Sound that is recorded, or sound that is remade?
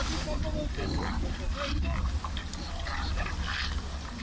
recorded